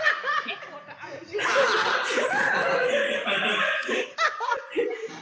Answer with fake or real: real